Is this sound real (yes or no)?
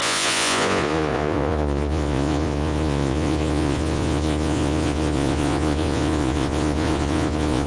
no